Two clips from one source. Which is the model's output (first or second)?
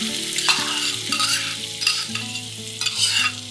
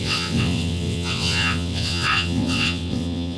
second